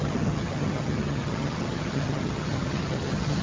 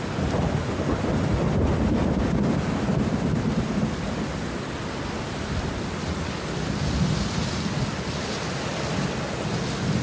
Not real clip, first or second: first